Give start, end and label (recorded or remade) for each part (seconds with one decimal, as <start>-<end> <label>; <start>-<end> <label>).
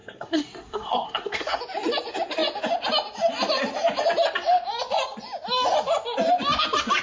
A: 0.0-1.6 remade; 1.6-7.0 recorded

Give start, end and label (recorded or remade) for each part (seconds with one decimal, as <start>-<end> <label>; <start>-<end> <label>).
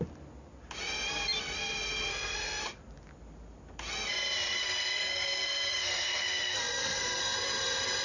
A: 0.0-2.1 recorded; 2.1-2.6 remade; 2.6-4.6 recorded; 4.6-7.2 remade; 7.2-8.0 recorded